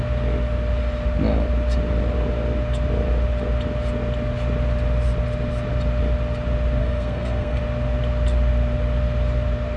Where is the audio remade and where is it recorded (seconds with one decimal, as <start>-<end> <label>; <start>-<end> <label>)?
0.0-6.8 recorded; 6.8-7.6 remade; 7.6-9.8 recorded